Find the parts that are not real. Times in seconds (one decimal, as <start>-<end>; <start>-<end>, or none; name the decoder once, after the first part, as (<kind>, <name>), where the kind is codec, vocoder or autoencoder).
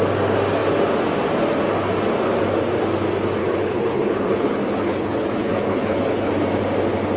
3.4-6.3 (codec, HILCodec)